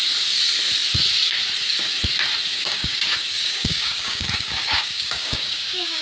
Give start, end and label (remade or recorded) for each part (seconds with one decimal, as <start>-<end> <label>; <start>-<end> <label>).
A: 0.0-2.5 recorded; 2.5-6.0 remade